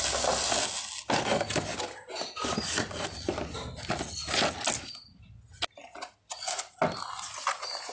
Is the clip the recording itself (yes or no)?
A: yes